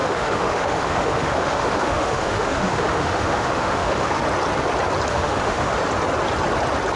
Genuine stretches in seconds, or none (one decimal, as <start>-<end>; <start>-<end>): 4.2-5.1; 5.8-7.0